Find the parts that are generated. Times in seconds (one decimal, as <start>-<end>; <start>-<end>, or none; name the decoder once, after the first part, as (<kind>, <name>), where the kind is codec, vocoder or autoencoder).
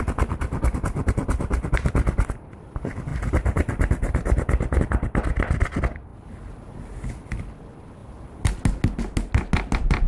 none